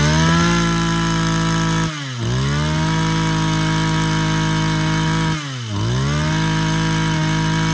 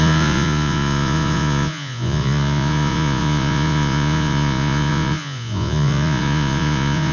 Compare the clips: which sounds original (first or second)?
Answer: first